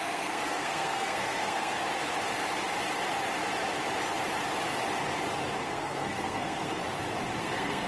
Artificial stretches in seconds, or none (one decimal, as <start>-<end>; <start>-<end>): 0.0-1.8; 5.6-6.8; 7.4-7.9